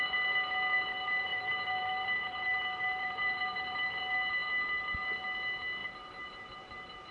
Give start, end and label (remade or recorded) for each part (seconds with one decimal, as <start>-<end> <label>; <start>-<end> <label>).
0.0-1.3 recorded; 1.3-4.0 remade; 4.0-5.8 recorded; 5.8-7.1 remade